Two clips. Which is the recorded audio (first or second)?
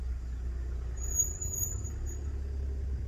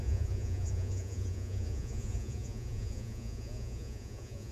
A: first